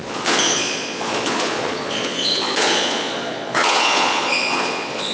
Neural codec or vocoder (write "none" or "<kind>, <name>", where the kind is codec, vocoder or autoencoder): vocoder, Vocos